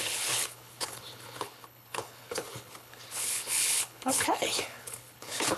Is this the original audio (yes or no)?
no